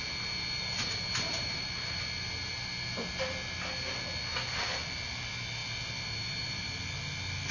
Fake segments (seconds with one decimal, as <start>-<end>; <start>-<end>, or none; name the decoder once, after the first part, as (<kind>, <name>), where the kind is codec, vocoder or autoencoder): none